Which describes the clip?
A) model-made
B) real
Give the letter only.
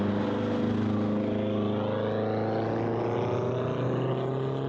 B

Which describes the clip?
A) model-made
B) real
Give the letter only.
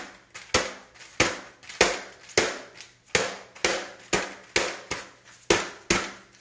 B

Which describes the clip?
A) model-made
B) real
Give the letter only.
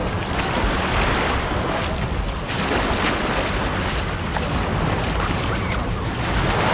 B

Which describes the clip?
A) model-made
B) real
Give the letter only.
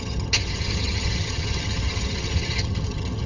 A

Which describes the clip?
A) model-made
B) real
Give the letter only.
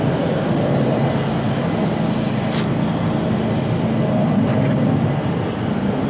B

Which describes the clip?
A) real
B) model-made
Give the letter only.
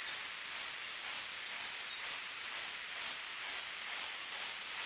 A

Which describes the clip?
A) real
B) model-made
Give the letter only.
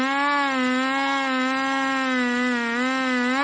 A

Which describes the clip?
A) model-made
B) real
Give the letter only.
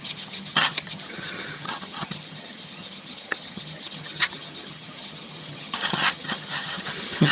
A